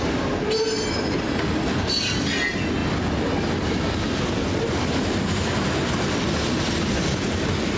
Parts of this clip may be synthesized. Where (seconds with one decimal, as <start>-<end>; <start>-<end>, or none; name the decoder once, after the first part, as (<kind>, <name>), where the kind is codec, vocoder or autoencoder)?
none